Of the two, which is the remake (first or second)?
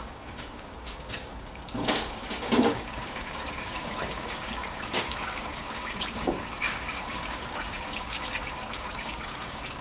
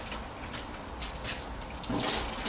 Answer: first